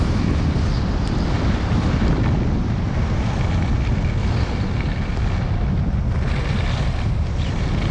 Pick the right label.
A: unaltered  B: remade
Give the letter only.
A